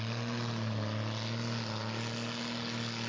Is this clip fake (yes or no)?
no